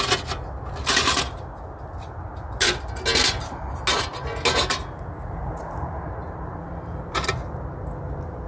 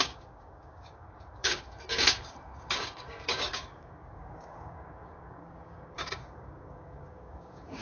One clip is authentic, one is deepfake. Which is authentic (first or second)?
first